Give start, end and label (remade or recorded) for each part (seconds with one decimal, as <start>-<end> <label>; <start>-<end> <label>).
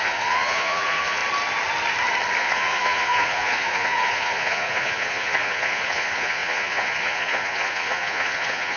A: 0.0-1.2 remade; 1.2-2.4 recorded; 2.4-8.8 remade